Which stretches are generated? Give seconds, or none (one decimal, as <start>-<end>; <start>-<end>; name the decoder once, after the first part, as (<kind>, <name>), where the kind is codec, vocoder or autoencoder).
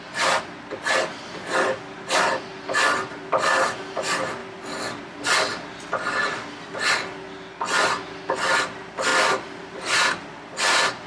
none